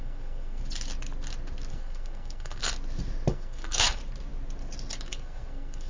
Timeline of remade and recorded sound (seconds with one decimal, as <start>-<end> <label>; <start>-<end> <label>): 0.0-0.6 remade; 0.6-1.7 recorded; 1.7-2.6 remade; 2.6-3.3 recorded; 3.3-4.0 remade; 4.0-5.1 recorded; 5.1-5.9 remade